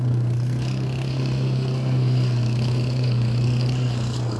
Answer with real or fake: fake